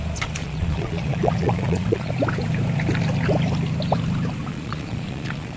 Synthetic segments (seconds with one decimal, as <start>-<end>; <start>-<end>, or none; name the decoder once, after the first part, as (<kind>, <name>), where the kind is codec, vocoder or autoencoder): 0.4-2.1 (vocoder, Vocos); 4.5-5.6